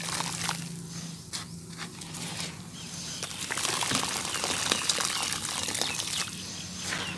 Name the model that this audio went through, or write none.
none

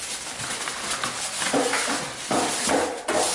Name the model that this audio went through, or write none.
none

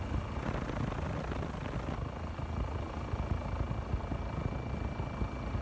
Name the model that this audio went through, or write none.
none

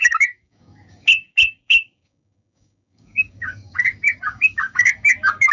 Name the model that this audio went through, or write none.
codec, DAC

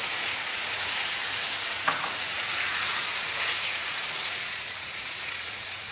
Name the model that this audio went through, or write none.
vocoder, Vocos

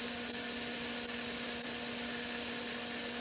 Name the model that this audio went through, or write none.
none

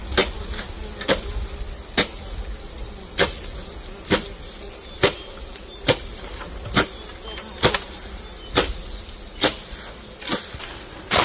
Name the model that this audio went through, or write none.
none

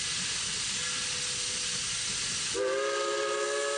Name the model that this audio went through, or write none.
none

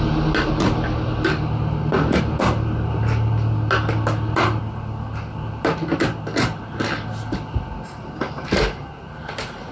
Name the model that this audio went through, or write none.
none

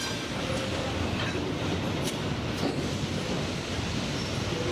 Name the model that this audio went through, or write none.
none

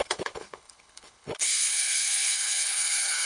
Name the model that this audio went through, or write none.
codec, HILCodec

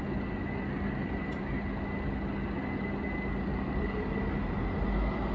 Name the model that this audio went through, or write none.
none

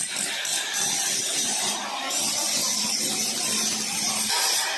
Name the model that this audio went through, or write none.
vocoder, BigVGAN v2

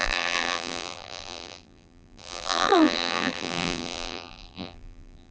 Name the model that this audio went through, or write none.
vocoder, BigVGAN v2